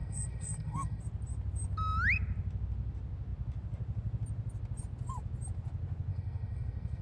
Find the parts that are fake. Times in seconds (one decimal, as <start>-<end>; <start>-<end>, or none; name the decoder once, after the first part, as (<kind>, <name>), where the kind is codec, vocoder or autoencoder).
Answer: 0.0-1.0 (codec, SNAC); 6.1-7.0